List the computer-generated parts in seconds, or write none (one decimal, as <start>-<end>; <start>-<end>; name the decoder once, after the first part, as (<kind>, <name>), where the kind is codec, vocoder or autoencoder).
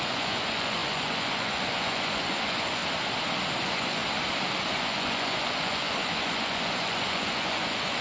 0.0-2.8 (vocoder, Vocos); 3.6-4.0; 4.7-8.0